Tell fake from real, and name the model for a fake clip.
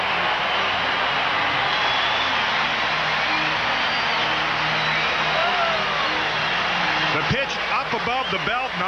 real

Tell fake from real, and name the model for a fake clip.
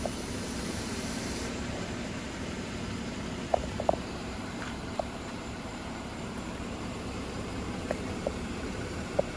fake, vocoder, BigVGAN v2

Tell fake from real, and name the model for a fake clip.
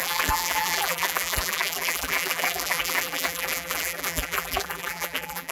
fake, vocoder, BigVGAN v2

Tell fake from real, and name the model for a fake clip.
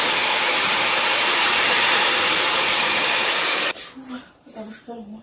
fake, vocoder, BigVGAN v2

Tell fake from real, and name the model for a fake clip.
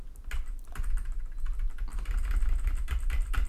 real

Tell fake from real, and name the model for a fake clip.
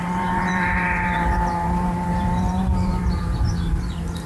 fake, vocoder, BigVGAN v2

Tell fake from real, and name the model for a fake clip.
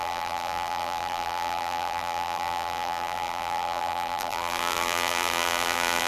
fake, vocoder, BigVGAN v2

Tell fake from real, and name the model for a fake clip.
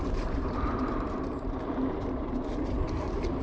fake, vocoder, BigVGAN v2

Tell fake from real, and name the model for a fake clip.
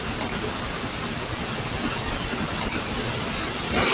real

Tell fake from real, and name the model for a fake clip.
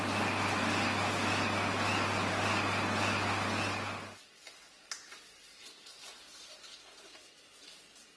real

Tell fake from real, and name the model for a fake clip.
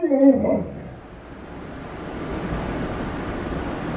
fake, vocoder, BigVGAN v2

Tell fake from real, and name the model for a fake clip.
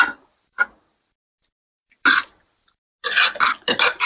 real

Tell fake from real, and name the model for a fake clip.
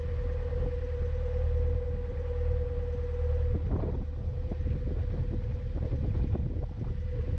real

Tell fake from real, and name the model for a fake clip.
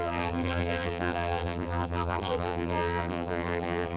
fake, vocoder, BigVGAN v2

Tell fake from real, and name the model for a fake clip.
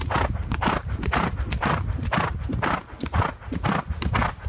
fake, vocoder, BigVGAN v2